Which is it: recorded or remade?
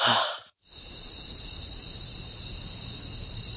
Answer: remade